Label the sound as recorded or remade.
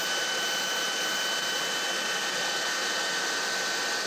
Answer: recorded